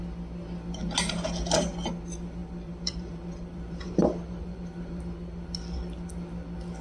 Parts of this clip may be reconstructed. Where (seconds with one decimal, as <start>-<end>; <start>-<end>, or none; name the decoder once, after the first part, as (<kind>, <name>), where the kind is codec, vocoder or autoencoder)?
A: 2.4-5.0 (vocoder, BigVGAN v2)